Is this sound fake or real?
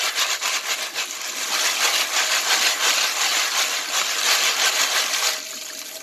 real